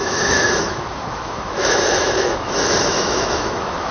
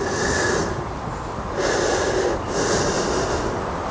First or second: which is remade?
first